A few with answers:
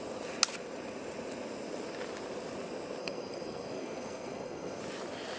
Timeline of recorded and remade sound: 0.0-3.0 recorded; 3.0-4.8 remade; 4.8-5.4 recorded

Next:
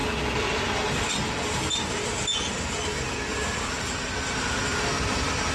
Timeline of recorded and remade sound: 0.0-3.3 recorded; 3.3-4.6 remade; 4.6-5.5 recorded

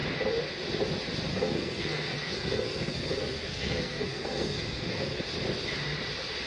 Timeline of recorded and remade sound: 0.0-1.3 recorded; 1.3-5.2 remade; 5.2-6.5 recorded

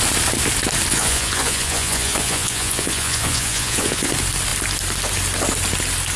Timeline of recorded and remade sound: 0.0-0.9 recorded; 0.9-4.1 remade; 4.1-6.2 recorded

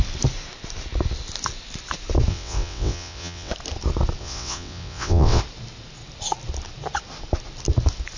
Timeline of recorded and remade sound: 0.0-2.3 recorded; 2.3-3.5 remade; 3.5-4.2 recorded; 4.2-5.4 remade; 5.4-8.2 recorded

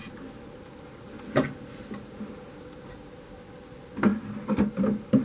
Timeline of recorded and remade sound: 0.0-5.2 recorded

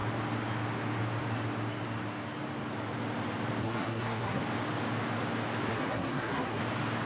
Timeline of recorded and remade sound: 0.0-3.6 recorded; 3.6-4.4 remade; 4.4-5.7 recorded; 5.7-6.6 remade; 6.6-7.1 recorded

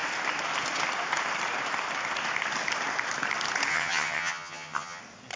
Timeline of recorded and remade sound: 0.0-3.7 recorded; 3.7-5.0 remade; 5.0-5.4 recorded